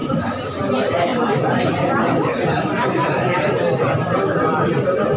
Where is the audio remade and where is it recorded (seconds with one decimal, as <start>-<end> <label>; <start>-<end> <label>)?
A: 0.0-0.6 remade; 0.6-1.1 recorded; 1.1-4.2 remade; 4.2-5.2 recorded